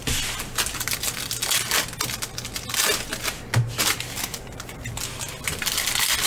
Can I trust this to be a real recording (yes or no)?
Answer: yes